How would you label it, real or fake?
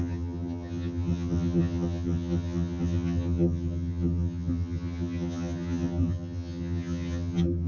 fake